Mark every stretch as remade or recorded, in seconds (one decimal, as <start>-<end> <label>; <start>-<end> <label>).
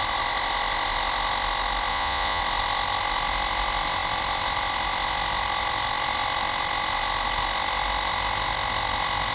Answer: 0.0-1.9 recorded; 1.9-2.4 remade; 2.4-9.3 recorded